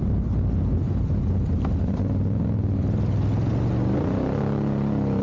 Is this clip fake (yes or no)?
no